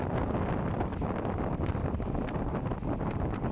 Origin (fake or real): real